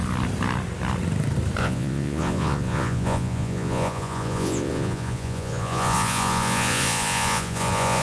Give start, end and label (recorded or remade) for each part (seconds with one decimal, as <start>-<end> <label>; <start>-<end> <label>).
0.0-1.6 recorded; 1.6-8.0 remade